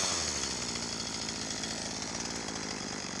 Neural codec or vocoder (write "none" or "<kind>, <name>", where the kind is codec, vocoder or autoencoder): vocoder, BigVGAN v2